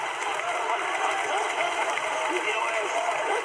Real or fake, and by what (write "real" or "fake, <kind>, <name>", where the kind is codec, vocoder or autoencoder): real